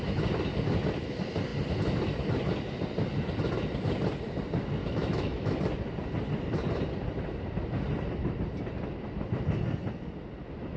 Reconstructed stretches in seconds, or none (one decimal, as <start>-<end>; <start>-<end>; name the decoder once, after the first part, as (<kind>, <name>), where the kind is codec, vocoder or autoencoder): 4.8-5.6 (autoencoder, DAC-VAE)